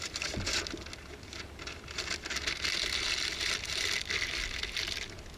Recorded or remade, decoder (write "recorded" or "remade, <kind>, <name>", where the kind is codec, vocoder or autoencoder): recorded